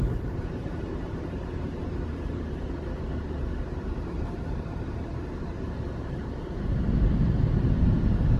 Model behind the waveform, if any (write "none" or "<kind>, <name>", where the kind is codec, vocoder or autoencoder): vocoder, BigVGAN v2